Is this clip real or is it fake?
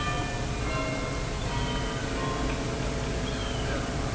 real